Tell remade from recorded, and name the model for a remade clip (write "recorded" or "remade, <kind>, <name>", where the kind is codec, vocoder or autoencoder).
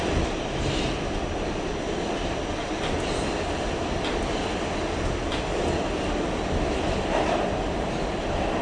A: recorded